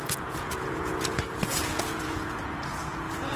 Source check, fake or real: fake